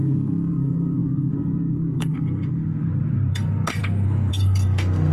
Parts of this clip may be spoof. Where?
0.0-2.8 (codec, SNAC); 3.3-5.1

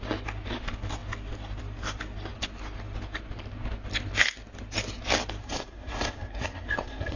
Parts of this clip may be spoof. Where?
5.4-7.2 (codec, SNAC)

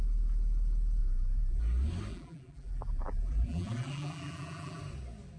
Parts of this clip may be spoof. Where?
1.0-1.6 (vocoder, BigVGAN v2); 2.1-4.8

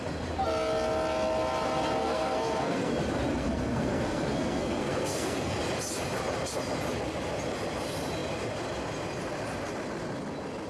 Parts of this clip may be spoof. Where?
2.0-2.9 (codec, SNAC); 3.3-5.6

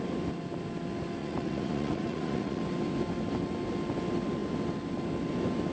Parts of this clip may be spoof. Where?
1.2-2.6 (vocoder, Vocos)

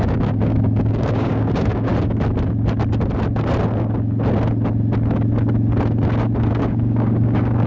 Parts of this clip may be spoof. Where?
0.0-1.9 (codec, DAC); 6.5-7.7

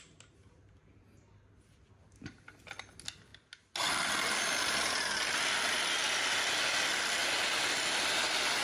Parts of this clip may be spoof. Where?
none

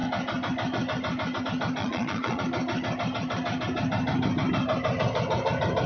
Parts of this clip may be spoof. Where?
1.8-2.4 (vocoder, Vocos)